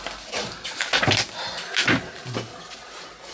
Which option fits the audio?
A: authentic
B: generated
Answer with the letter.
A